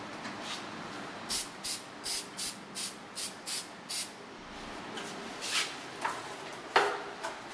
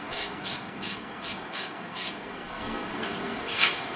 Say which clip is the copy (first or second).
second